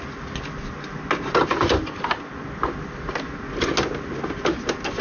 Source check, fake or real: real